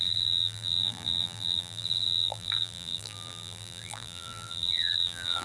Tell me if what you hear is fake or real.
fake